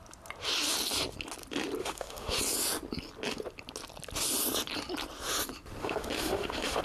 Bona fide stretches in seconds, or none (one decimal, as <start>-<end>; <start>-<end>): 0.0-1.8; 2.4-5.8